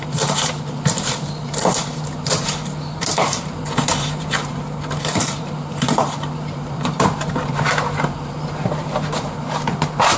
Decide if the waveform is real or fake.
fake